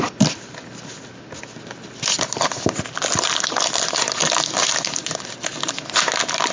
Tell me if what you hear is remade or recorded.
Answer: recorded